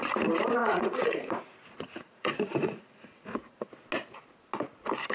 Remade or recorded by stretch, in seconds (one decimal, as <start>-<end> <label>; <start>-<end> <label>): 0.0-0.6 recorded; 0.6-3.7 remade; 3.7-5.1 recorded